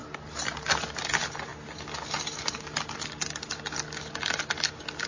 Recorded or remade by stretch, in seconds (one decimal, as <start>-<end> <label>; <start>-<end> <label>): 0.0-5.1 recorded